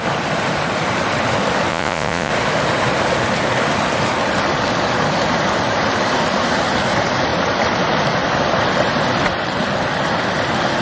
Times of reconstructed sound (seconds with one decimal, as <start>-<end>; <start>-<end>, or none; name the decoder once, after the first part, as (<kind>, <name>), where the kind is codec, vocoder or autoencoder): 1.7-2.3 (vocoder, Vocos)